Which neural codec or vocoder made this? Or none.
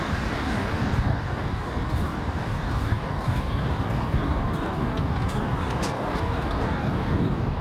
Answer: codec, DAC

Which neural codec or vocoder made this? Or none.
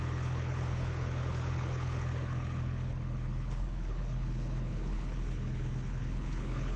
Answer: codec, HILCodec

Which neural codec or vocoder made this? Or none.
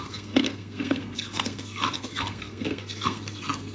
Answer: codec, SNAC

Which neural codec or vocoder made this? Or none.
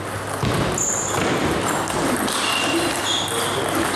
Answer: none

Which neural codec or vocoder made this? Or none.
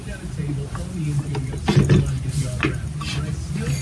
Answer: none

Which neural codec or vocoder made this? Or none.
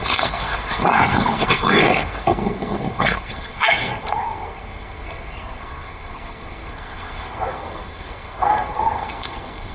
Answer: codec, SNAC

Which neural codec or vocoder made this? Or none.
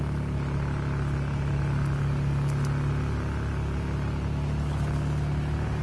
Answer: none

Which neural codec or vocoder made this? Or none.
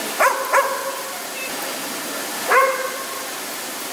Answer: none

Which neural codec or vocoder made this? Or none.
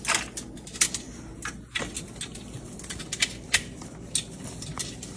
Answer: none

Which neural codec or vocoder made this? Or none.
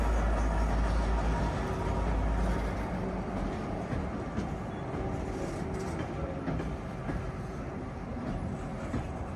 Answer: none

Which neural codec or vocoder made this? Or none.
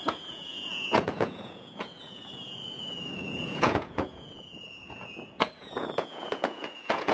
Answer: vocoder, Vocos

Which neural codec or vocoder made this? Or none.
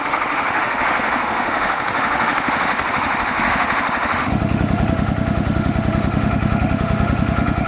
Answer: autoencoder, DAC-VAE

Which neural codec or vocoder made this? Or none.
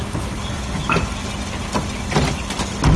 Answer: none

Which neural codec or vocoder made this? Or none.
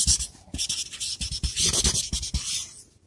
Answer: none